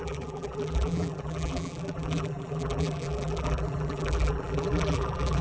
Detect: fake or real fake